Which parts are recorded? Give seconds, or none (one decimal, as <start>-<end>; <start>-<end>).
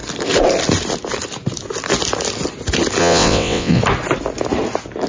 0.0-3.0; 3.8-5.1